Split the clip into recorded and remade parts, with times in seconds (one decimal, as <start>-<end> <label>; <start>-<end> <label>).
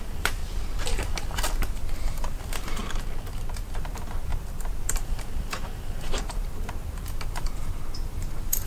0.0-0.4 remade; 0.4-2.0 recorded; 2.0-2.8 remade; 2.8-3.8 recorded; 3.8-8.7 remade